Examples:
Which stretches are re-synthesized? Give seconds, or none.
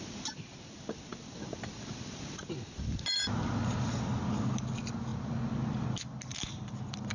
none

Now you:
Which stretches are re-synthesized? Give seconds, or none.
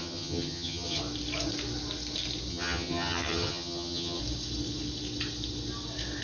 0.0-1.0 (vocoder, HiFi-GAN); 2.5-4.2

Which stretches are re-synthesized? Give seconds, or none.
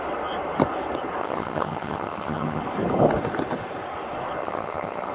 1.2-2.6 (vocoder, HiFi-GAN); 4.4-5.1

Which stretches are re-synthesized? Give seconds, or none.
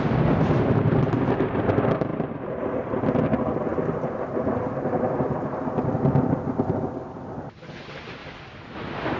none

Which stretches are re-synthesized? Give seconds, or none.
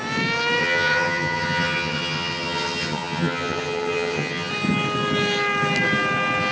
0.6-4.5 (vocoder, HiFi-GAN)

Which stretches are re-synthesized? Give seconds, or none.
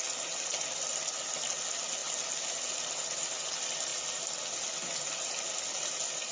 none